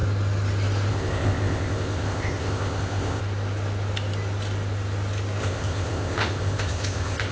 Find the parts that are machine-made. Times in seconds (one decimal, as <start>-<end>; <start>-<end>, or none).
0.9-3.2; 5.4-7.3